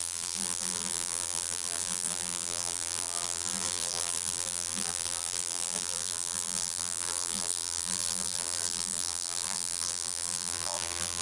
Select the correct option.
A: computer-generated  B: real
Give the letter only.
A